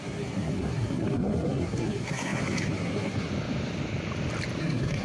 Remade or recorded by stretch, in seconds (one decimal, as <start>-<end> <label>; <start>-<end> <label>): 0.0-3.3 remade; 3.3-4.6 recorded; 4.6-5.0 remade